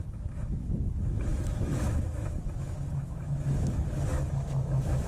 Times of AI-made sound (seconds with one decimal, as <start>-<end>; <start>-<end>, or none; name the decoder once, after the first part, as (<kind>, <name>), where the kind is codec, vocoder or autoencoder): 0.0-5.1 (autoencoder, DAC-VAE)